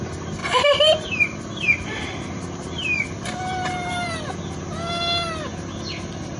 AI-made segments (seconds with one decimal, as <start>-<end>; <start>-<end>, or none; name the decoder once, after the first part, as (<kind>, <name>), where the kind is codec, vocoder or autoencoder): 0.4-4.2 (vocoder, BigVGAN v2)